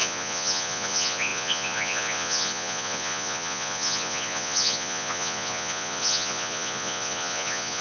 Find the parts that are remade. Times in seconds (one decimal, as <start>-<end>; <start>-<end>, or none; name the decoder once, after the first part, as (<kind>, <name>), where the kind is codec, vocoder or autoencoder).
0.0-7.8 (vocoder, Vocos)